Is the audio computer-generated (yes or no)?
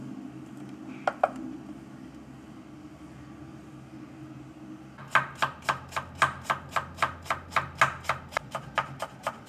no